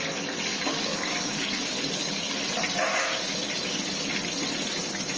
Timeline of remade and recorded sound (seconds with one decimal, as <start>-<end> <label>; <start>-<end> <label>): 0.0-0.5 recorded; 0.5-2.4 remade; 2.4-2.9 recorded; 2.9-4.2 remade; 4.2-5.2 recorded